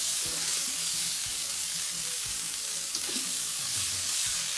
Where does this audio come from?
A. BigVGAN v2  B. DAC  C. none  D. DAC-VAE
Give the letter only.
B